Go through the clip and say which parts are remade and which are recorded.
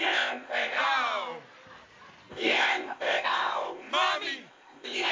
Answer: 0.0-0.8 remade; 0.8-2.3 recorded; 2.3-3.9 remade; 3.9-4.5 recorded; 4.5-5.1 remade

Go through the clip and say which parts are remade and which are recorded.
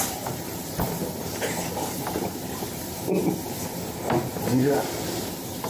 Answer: 0.0-3.2 remade; 3.2-5.7 recorded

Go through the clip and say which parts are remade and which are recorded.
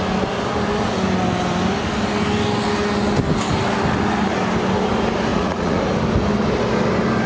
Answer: 0.0-5.3 recorded; 5.3-5.8 remade; 5.8-7.3 recorded